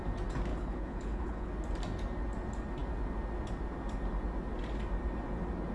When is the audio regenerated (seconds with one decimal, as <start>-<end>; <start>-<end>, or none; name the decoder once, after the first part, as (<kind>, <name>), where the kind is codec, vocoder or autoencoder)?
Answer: 0.5-1.5 (codec, HILCodec)